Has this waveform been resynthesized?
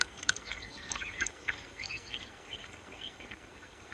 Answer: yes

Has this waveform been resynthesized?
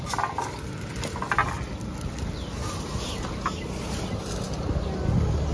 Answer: no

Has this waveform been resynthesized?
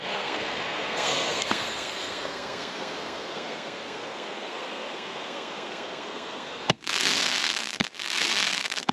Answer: yes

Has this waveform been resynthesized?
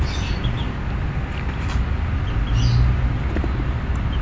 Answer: no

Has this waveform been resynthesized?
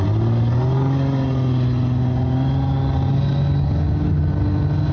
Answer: no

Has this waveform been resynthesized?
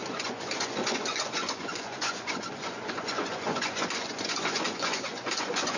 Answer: yes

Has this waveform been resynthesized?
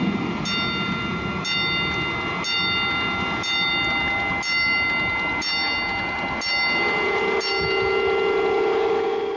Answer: no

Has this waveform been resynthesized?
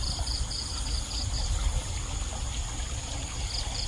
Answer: no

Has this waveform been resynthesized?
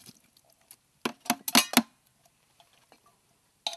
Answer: no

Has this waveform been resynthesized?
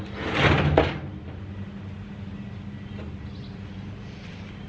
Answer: no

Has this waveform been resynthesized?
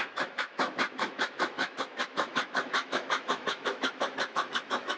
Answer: yes